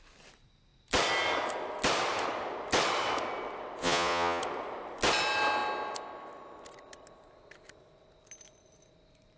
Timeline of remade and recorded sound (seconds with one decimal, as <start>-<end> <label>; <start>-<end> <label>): 0.0-3.8 recorded; 3.8-4.4 remade; 4.4-9.4 recorded